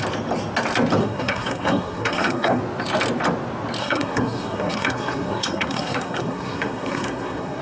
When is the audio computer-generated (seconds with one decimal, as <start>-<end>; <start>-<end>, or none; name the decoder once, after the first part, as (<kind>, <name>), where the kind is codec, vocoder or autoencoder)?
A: 1.0-2.6 (codec, SNAC); 3.8-7.6